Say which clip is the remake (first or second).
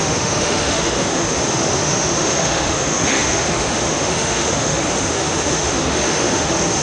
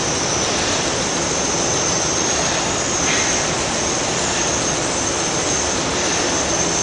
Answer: first